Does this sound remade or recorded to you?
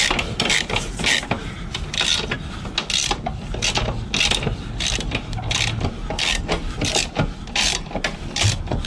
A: recorded